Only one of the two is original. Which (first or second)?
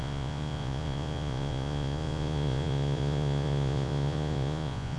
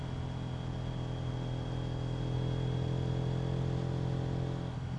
second